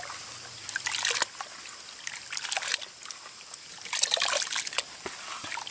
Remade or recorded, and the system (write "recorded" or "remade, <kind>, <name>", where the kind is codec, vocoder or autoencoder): recorded